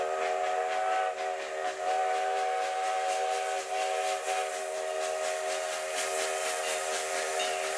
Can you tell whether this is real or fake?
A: real